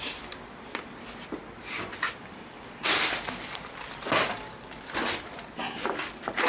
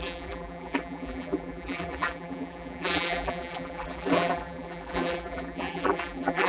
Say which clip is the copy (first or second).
second